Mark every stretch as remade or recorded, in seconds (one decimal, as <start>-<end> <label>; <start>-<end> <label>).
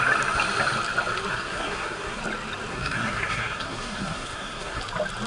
0.0-1.3 recorded; 1.3-2.2 remade; 2.2-2.7 recorded; 2.7-4.8 remade; 4.8-5.3 recorded